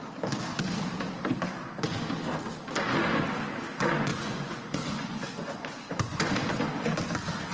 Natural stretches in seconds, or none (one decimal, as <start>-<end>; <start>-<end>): 0.0-4.1; 6.3-7.5